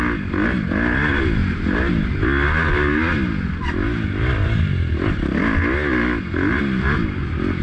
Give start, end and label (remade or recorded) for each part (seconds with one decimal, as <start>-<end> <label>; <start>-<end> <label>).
0.0-7.6 recorded